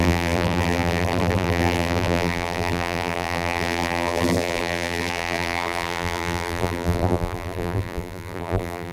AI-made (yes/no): yes